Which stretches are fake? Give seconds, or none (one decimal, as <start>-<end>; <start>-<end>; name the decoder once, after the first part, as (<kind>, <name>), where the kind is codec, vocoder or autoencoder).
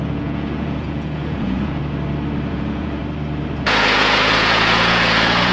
0.0-1.8 (vocoder, Vocos); 2.5-3.0; 3.6-5.5